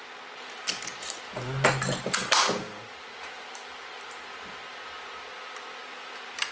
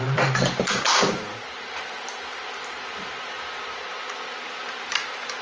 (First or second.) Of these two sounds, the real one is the first